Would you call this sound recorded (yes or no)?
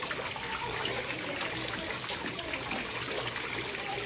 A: no